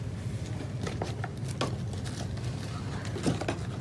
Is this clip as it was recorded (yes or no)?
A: yes